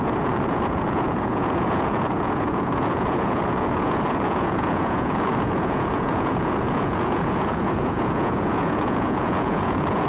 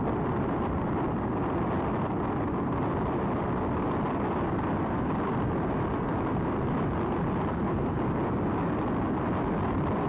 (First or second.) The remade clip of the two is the first